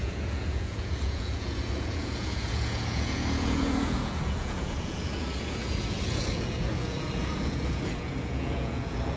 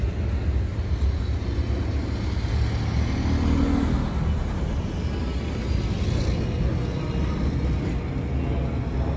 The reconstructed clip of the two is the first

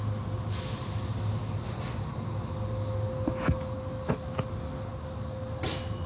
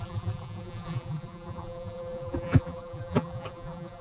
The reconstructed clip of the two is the second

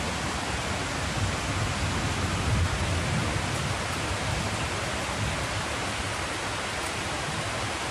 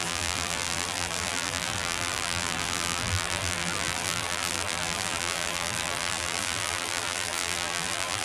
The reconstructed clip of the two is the second